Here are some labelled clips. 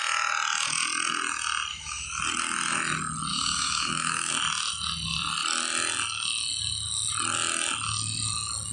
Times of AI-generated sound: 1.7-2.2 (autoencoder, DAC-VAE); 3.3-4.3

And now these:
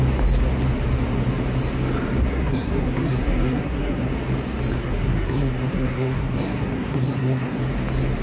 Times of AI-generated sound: 2.3-4.1 (codec, SNAC); 4.8-7.6

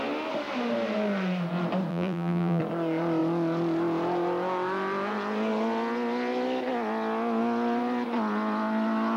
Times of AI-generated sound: 1.9-2.6 (vocoder, BigVGAN v2)

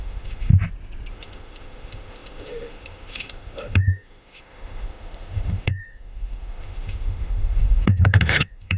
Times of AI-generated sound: 0.0-0.5 (autoencoder, DAC-VAE); 1.1-8.8